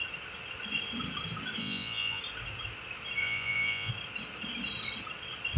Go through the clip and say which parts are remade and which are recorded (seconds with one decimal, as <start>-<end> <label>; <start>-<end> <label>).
0.0-1.6 recorded; 1.6-2.2 remade; 2.2-3.2 recorded; 3.2-3.9 remade; 3.9-5.6 recorded